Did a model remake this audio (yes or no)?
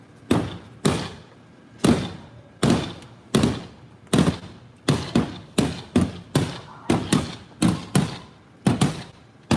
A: no